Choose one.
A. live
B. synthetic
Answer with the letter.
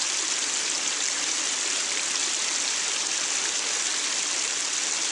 A